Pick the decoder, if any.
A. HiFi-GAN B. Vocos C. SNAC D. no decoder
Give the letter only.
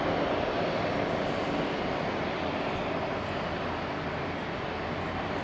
D